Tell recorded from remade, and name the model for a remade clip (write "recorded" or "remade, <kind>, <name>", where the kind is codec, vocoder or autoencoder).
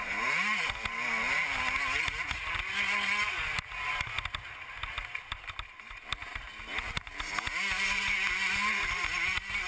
recorded